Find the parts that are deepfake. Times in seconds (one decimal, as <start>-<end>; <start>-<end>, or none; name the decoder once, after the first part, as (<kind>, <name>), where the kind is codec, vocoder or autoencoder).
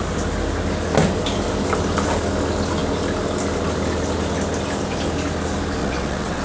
5.8-6.4 (vocoder, WaveNeXt)